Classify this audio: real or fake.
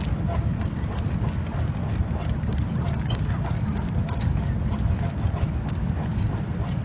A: real